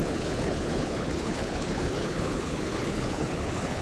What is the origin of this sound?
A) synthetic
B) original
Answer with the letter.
A